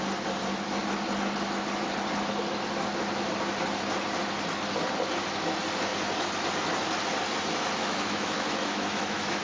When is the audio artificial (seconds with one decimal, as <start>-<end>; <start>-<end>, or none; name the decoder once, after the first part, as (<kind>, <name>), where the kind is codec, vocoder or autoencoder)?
7.8-9.4 (autoencoder, DAC-VAE)